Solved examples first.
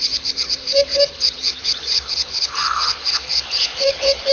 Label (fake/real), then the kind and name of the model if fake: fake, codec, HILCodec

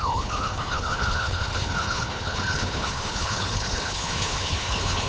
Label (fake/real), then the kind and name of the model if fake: fake, codec, HILCodec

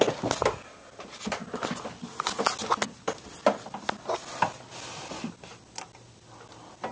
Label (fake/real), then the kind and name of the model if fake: real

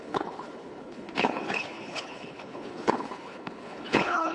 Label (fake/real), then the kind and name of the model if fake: fake, codec, HILCodec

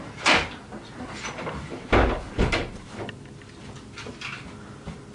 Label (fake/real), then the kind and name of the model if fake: real